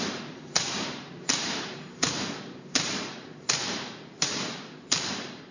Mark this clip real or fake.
fake